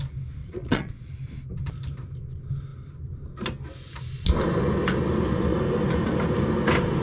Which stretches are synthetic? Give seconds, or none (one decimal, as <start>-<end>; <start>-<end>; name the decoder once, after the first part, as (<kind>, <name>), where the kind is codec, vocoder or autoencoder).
0.4-1.1 (vocoder, Vocos)